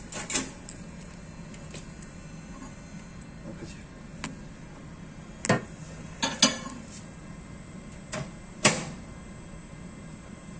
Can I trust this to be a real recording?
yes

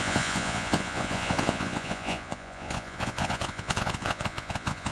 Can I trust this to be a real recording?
no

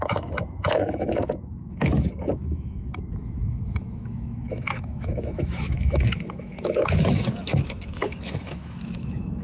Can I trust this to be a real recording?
no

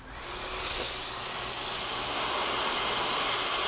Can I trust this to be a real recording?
yes